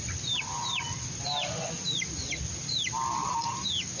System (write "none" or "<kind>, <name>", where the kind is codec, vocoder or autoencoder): none